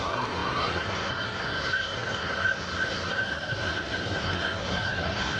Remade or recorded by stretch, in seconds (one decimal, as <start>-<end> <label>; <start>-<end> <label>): 0.0-5.4 remade